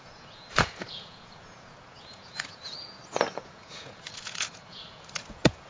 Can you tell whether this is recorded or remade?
remade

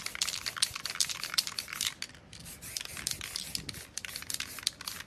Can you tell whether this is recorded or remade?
recorded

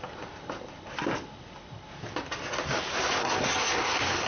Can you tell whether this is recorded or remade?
recorded